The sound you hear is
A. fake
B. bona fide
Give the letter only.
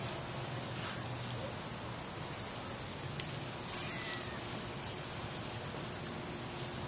B